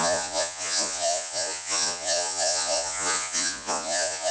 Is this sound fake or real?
fake